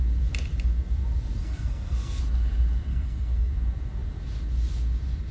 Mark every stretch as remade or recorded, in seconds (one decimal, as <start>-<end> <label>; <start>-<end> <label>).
0.0-1.4 recorded; 1.4-2.2 remade; 2.2-2.9 recorded; 2.9-3.5 remade; 3.5-5.3 recorded